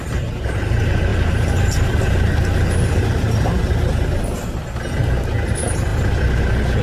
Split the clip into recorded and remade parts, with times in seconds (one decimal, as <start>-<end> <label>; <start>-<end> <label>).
0.0-1.1 recorded; 1.1-3.1 remade; 3.1-5.9 recorded; 5.9-6.8 remade